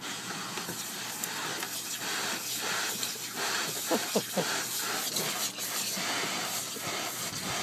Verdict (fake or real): real